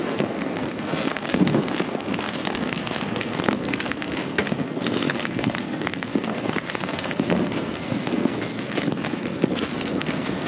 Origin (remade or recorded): remade